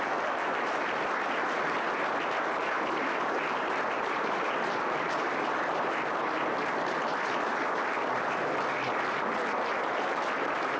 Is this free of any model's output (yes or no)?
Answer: yes